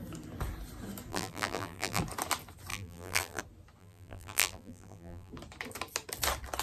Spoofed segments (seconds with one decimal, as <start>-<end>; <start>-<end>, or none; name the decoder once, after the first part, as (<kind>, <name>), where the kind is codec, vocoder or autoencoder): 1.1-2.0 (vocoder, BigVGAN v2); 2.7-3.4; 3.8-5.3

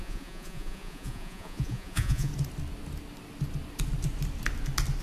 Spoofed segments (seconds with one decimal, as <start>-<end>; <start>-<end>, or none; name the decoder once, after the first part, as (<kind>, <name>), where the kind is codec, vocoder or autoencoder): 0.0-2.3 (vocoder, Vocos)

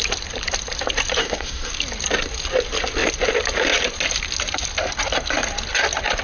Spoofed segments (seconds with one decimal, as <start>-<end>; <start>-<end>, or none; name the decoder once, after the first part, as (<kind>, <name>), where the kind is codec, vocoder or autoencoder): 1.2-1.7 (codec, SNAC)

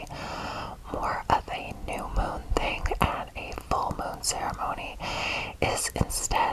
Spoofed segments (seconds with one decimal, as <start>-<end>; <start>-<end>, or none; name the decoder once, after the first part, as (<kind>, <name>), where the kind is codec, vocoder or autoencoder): 4.6-5.2 (vocoder, Vocos)

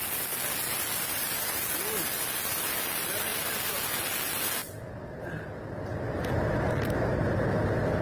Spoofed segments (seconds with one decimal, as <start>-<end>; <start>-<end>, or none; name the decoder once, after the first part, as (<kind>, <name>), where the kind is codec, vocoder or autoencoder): none